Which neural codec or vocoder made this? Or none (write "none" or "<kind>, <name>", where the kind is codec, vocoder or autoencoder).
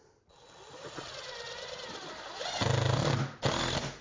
none